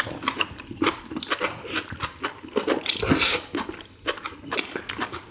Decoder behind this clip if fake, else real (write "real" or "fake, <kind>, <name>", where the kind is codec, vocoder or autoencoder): real